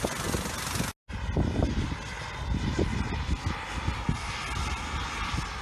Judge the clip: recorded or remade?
recorded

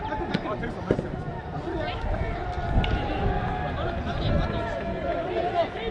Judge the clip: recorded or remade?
recorded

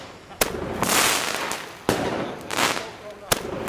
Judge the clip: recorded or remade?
recorded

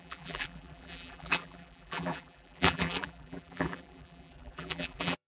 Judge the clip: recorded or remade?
remade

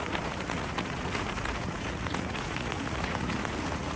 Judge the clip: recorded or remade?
remade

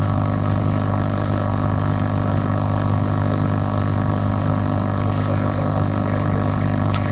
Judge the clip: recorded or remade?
remade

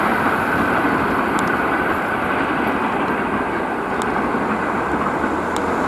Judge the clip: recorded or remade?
recorded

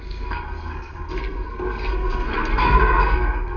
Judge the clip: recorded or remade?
remade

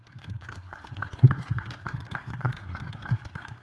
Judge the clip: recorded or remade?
remade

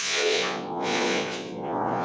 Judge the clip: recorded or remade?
remade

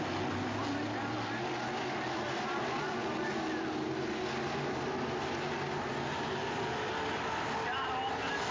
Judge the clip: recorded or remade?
recorded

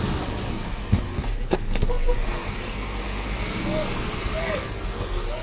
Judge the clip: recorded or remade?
remade